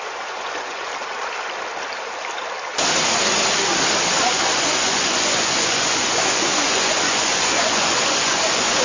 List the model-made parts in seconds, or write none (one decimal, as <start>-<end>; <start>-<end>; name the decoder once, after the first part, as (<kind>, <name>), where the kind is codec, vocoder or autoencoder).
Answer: 0.0-0.9 (vocoder, Vocos); 4.3-8.8